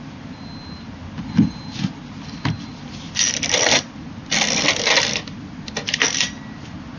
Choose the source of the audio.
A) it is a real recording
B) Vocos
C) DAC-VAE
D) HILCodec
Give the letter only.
A